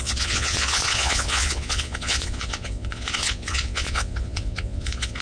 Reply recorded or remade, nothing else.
remade